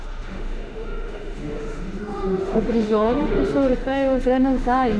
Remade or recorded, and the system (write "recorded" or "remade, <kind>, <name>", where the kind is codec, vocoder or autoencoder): remade, autoencoder, DAC-VAE